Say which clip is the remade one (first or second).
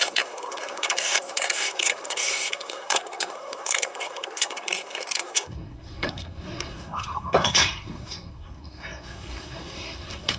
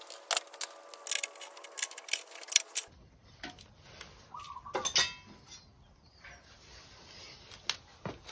first